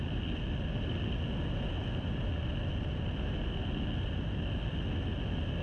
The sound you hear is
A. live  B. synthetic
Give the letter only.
A